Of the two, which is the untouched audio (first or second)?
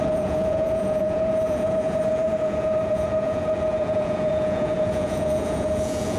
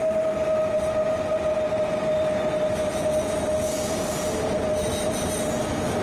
second